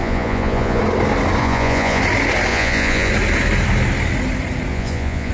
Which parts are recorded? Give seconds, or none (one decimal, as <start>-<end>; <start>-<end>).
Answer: 0.8-1.4; 2.0-2.5; 3.1-4.7